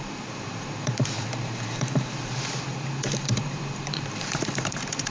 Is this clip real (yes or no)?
no